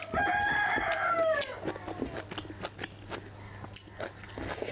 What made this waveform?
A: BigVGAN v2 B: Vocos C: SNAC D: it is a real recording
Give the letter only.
D